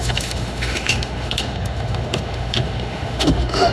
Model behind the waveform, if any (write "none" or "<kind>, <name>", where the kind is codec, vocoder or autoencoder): autoencoder, DAC-VAE